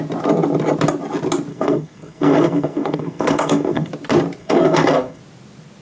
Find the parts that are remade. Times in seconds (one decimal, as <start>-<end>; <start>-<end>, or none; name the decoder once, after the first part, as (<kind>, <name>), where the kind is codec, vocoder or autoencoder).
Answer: 1.5-3.9 (codec, SNAC); 4.4-5.2